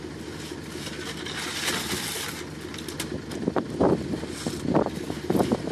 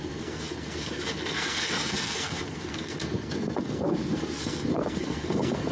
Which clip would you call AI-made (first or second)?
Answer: second